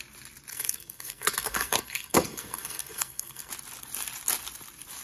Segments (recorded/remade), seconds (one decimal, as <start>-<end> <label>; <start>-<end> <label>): 0.0-0.5 recorded; 0.5-3.5 remade; 3.5-5.0 recorded